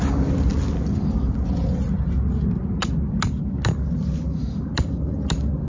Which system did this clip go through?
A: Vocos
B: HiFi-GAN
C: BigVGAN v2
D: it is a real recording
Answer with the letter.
D